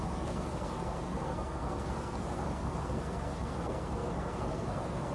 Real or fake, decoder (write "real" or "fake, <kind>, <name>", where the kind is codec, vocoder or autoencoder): fake, codec, SNAC